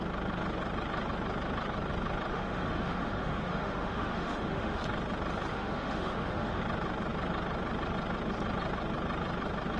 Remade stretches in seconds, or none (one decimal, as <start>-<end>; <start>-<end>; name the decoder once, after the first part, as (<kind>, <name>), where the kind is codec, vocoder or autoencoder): 2.3-4.8 (autoencoder, DAC-VAE); 5.5-6.6